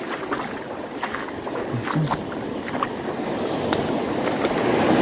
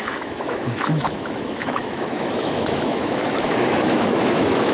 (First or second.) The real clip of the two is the first